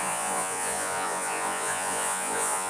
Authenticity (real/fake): fake